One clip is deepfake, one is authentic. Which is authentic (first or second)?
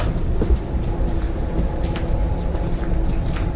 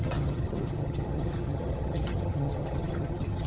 first